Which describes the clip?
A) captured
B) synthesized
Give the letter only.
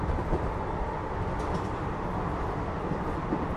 A